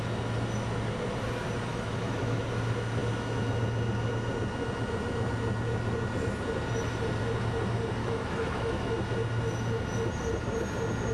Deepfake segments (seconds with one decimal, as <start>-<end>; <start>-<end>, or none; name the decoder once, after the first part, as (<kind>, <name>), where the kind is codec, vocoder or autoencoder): 1.7-2.4 (autoencoder, DAC-VAE); 8.0-8.9